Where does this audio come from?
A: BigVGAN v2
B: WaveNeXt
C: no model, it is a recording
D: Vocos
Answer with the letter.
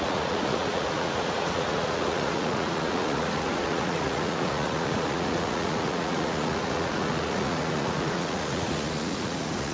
D